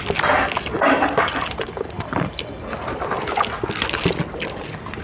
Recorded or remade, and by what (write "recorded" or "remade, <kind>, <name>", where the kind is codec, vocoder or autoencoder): recorded